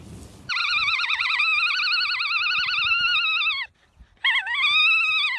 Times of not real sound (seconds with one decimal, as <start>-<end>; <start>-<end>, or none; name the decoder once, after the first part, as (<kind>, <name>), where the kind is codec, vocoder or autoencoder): 0.6-1.4 (vocoder, Vocos)